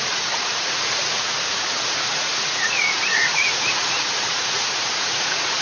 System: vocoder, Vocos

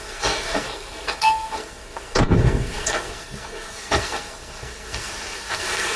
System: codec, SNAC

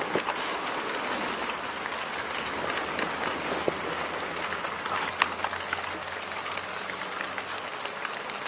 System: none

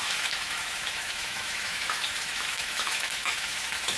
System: autoencoder, DAC-VAE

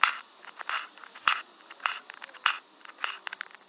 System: none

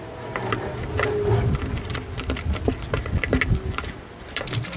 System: none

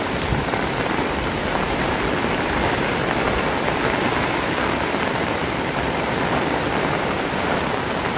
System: vocoder, BigVGAN v2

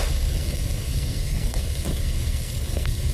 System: codec, SNAC